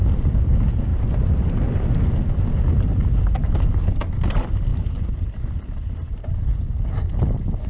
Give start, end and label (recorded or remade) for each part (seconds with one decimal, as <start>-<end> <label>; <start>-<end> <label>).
0.0-0.9 recorded; 0.9-2.0 remade; 2.0-4.7 recorded; 4.7-6.3 remade; 6.3-7.7 recorded

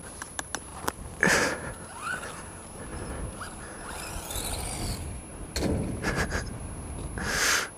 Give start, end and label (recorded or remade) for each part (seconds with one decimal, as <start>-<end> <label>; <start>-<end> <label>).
0.0-0.7 recorded; 0.7-1.2 remade; 1.2-5.3 recorded; 5.3-6.6 remade; 6.6-7.8 recorded

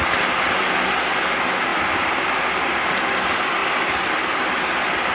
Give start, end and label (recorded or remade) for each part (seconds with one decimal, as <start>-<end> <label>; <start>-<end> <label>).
0.0-1.7 recorded; 1.7-2.4 remade; 2.4-3.6 recorded; 3.6-5.1 remade

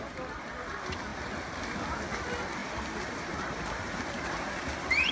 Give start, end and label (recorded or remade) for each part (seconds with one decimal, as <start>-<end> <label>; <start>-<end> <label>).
0.0-2.6 recorded; 2.6-5.1 remade

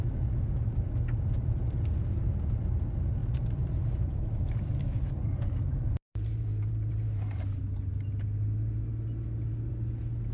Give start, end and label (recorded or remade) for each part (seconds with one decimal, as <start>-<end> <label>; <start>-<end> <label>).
0.0-3.2 recorded; 3.2-7.4 remade; 7.4-10.3 recorded

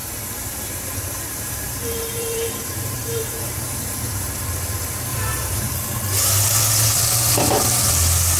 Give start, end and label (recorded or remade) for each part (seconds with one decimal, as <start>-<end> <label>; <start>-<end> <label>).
0.0-4.3 remade; 4.3-5.1 recorded; 5.1-5.6 remade; 5.6-8.4 recorded

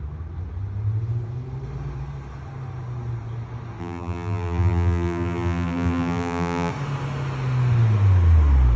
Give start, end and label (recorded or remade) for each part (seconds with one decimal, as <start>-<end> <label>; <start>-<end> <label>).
0.0-3.8 recorded; 3.8-6.7 remade; 6.7-8.8 recorded

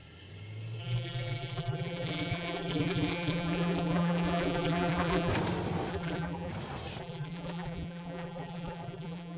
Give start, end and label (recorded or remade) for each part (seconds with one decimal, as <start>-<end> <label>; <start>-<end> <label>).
0.0-0.8 recorded; 0.8-5.3 remade; 5.3-5.9 recorded; 5.9-6.5 remade; 6.5-7.0 recorded; 7.0-9.4 remade